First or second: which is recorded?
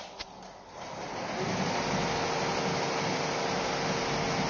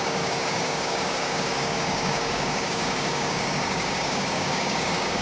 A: first